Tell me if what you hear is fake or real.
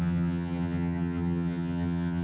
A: fake